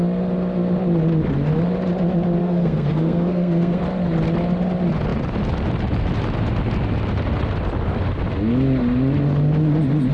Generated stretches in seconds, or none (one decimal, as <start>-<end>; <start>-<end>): 2.4-3.8